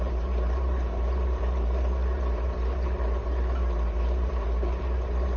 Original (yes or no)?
no